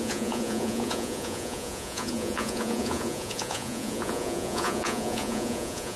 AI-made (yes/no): yes